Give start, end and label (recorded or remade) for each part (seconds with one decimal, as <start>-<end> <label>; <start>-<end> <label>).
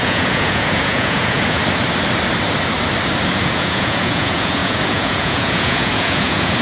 0.0-1.6 remade; 1.6-3.4 recorded; 3.4-6.6 remade